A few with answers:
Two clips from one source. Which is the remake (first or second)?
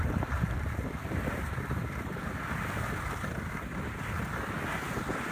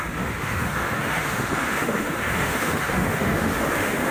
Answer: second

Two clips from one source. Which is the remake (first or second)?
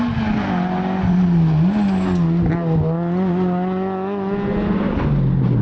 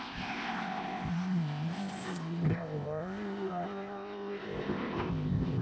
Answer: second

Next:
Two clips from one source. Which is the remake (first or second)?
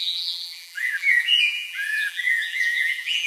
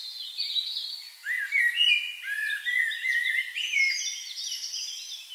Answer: first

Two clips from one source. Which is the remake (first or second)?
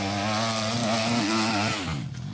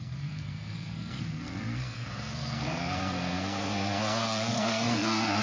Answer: second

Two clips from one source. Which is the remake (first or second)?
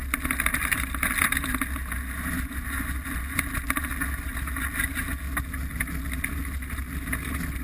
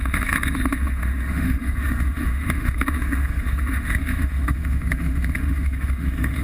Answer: second